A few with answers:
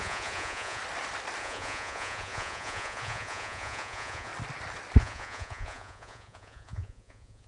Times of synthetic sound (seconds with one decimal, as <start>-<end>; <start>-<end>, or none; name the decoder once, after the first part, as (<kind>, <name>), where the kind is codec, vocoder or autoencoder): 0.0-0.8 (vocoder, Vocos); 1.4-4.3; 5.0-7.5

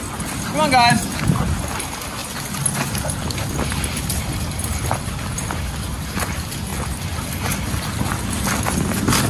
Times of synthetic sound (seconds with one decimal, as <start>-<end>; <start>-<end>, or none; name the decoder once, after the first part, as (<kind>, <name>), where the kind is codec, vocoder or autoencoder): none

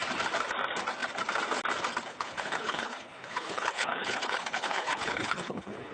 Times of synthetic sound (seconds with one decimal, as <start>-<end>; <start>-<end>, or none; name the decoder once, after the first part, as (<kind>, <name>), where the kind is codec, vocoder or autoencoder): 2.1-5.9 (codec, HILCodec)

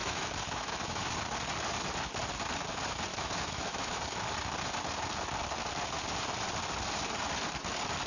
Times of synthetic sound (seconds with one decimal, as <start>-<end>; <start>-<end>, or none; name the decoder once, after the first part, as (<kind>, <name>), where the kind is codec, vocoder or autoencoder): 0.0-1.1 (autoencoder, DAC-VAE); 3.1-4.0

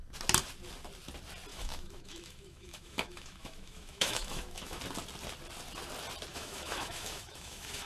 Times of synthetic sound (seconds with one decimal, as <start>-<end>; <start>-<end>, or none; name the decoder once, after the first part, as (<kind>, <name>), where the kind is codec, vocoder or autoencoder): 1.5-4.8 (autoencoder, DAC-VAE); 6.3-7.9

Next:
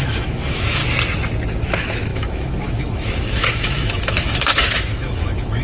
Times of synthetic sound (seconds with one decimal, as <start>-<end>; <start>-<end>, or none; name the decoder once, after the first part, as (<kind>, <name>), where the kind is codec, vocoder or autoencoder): 0.0-0.8 (autoencoder, DAC-VAE); 1.5-5.6

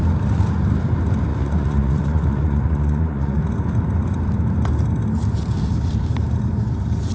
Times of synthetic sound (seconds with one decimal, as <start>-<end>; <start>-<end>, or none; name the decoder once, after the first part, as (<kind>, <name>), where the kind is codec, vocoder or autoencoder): 1.3-3.4 (vocoder, Vocos)

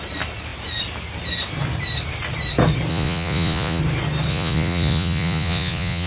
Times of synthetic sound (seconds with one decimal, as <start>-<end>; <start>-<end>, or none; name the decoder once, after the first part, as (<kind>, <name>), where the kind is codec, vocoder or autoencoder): 2.9-3.8 (vocoder, Vocos); 4.3-6.1